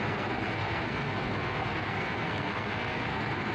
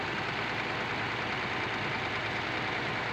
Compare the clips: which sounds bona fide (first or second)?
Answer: second